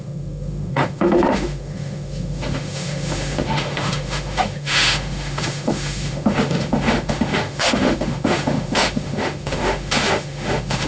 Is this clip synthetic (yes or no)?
yes